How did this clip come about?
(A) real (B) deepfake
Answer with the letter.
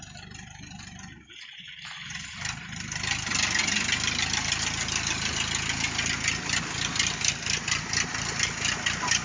A